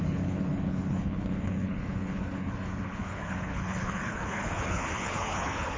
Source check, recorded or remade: remade